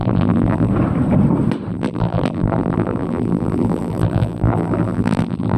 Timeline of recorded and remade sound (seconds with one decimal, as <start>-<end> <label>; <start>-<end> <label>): 0.0-0.7 remade; 0.7-1.7 recorded; 1.7-5.6 remade